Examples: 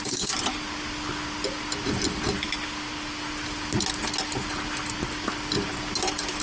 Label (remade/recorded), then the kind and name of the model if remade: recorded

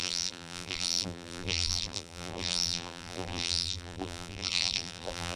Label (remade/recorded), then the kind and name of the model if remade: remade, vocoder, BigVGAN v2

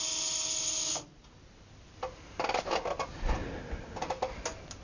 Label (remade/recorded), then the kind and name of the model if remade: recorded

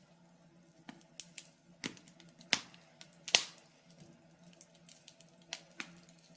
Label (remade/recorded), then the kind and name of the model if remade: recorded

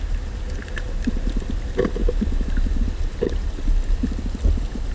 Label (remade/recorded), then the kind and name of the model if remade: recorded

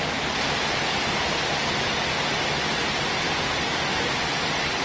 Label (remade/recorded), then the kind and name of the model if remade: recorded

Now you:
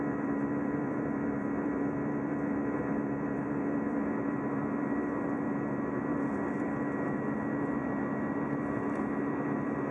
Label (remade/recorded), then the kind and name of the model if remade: remade, vocoder, BigVGAN v2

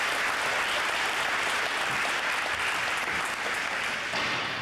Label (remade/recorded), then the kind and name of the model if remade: recorded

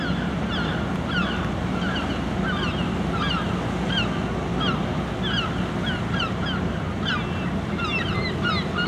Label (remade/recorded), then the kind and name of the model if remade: recorded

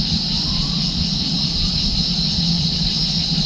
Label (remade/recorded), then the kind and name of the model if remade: recorded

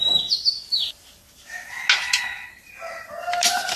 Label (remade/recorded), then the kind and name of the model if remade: recorded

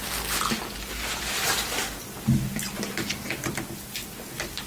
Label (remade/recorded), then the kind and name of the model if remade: recorded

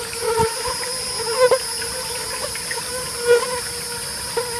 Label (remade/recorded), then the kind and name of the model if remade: recorded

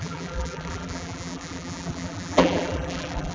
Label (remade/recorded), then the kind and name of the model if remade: remade, vocoder, BigVGAN v2